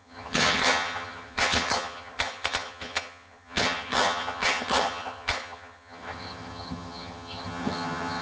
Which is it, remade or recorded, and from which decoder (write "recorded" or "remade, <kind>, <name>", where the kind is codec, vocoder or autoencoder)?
remade, vocoder, HiFi-GAN